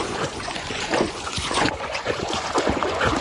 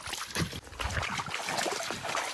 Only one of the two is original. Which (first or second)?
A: second